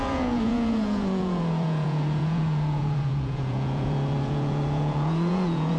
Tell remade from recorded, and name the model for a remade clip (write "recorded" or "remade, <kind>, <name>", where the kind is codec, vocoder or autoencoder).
remade, vocoder, Vocos